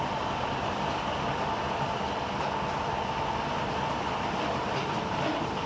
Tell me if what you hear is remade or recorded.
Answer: recorded